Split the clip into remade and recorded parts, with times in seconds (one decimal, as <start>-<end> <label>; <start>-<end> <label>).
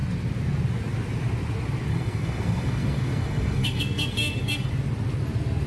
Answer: 0.0-1.9 recorded; 1.9-4.7 remade; 4.7-5.7 recorded